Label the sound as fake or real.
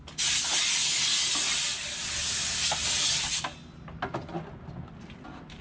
real